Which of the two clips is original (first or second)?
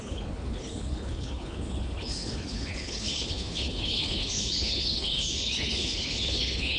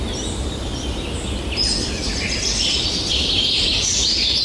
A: second